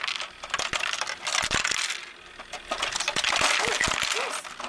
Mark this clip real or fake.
real